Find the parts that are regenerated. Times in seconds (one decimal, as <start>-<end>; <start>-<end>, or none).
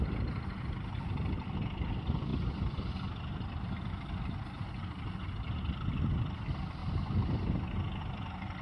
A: none